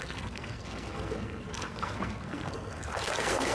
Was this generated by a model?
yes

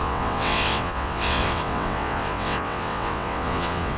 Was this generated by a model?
yes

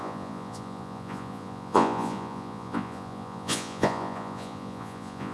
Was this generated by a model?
yes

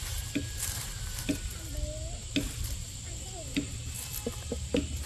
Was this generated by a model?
no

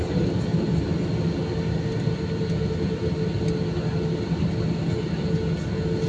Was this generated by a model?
no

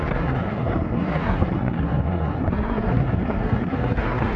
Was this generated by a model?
yes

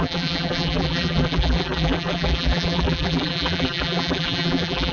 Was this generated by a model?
yes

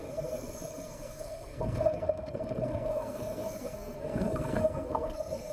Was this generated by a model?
yes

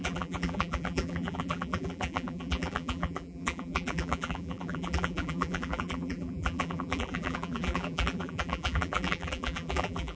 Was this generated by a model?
yes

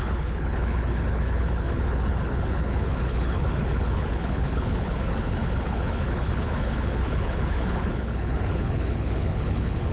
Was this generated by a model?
yes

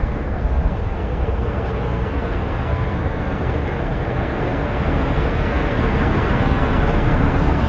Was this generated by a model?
yes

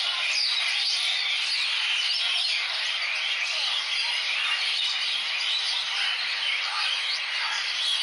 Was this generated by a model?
no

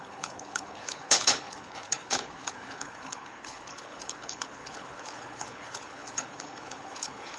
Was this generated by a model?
yes